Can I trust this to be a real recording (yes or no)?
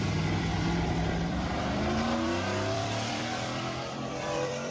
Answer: no